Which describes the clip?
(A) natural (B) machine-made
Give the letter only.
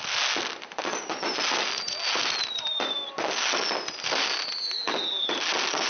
A